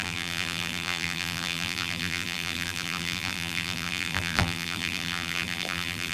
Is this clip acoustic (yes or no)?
no